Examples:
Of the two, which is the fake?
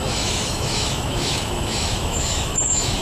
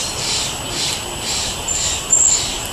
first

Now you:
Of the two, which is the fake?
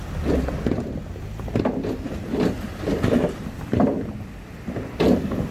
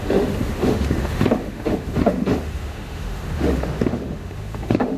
second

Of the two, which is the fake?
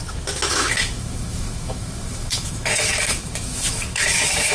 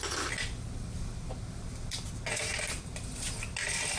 first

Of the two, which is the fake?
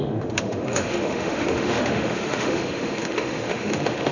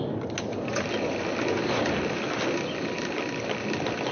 first